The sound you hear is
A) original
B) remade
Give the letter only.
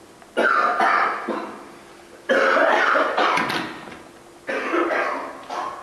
A